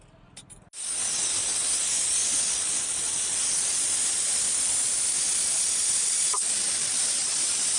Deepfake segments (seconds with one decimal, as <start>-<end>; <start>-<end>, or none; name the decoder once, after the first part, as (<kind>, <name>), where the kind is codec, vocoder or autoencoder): none